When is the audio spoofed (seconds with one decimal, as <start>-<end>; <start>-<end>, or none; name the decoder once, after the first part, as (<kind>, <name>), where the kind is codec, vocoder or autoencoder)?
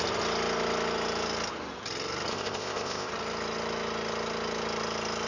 2.3-3.1 (codec, ZipCodec)